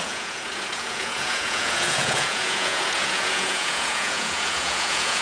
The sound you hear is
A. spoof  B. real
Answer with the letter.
A